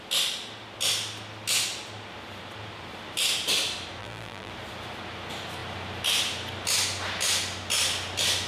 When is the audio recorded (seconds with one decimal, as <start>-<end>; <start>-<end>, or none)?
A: 0.0-4.0; 4.5-8.5